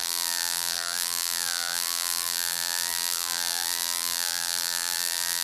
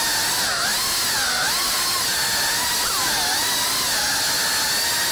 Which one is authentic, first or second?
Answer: second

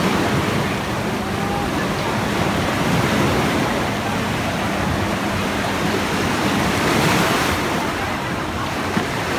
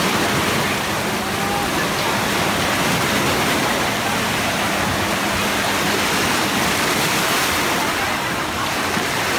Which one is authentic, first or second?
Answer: second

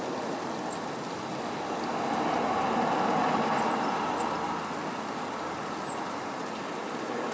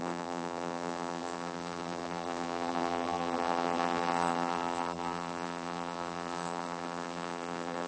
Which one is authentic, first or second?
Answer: first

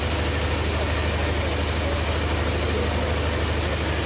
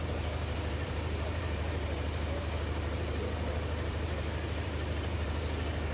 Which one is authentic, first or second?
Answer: first